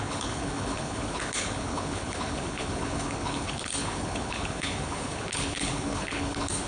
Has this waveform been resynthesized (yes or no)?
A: yes